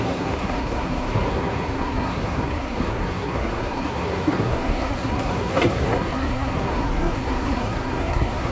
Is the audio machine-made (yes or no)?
yes